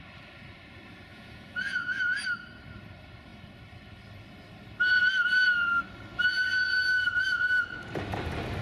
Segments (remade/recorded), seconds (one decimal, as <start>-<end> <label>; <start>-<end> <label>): 0.0-1.1 recorded; 1.1-2.0 remade; 2.0-8.6 recorded